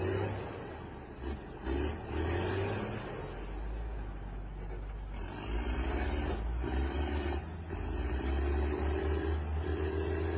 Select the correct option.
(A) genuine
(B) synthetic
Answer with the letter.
A